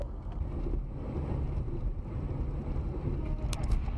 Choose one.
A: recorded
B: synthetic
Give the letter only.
A